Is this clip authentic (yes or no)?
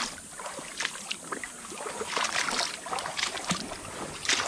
yes